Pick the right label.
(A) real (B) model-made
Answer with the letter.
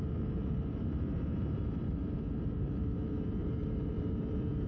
B